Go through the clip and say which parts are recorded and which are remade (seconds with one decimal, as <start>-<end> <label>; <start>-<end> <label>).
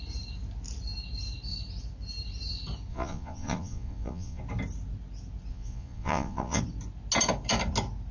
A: 0.0-2.9 recorded; 2.9-4.4 remade; 4.4-5.5 recorded; 5.5-6.6 remade; 6.6-8.1 recorded